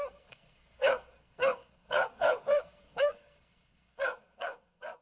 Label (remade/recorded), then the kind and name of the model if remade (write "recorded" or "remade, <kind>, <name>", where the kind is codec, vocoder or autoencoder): remade, codec, SNAC